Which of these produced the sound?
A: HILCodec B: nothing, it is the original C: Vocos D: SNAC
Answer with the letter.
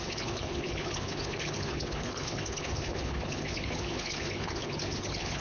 A